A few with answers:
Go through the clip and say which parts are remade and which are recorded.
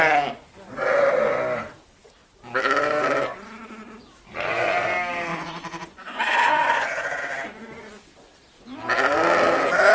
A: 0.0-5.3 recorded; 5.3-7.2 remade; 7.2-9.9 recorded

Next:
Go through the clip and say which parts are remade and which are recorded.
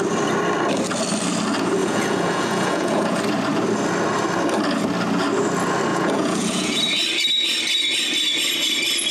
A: 0.0-1.8 recorded; 1.8-3.2 remade; 3.2-5.9 recorded; 5.9-6.8 remade; 6.8-9.1 recorded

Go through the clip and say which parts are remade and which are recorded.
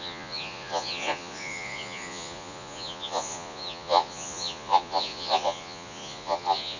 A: 0.0-6.8 remade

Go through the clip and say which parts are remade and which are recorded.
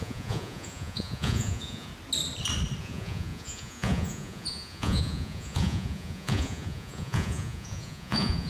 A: 0.0-1.9 remade; 1.9-2.8 recorded; 2.8-8.5 remade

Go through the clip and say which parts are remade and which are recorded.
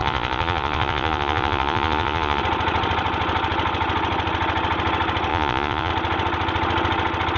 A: 0.0-2.4 remade; 2.4-5.3 recorded; 5.3-5.9 remade; 5.9-7.4 recorded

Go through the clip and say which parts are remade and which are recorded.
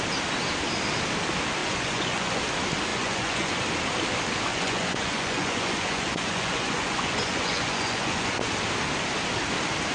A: 0.0-1.6 recorded; 1.6-2.4 remade; 2.4-2.9 recorded; 2.9-3.5 remade; 3.5-4.5 recorded; 4.5-8.4 remade; 8.4-9.9 recorded